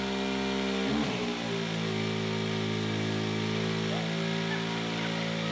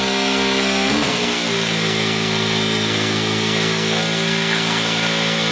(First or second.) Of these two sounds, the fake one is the second